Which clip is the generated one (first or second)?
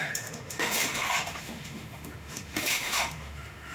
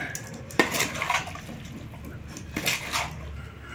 first